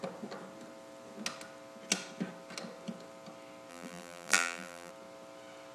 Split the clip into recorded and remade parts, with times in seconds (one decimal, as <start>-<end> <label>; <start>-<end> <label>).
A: 0.0-3.7 recorded; 3.7-4.9 remade; 4.9-5.7 recorded